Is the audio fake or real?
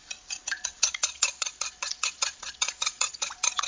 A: fake